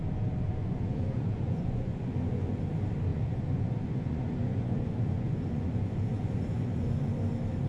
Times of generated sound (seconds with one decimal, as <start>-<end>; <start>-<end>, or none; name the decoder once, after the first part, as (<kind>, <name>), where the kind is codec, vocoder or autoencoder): 0.4-2.6 (vocoder, Vocos); 3.1-7.1